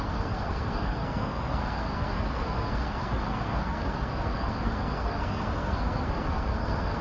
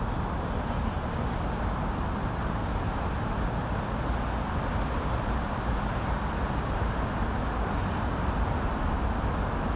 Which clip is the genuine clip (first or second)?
second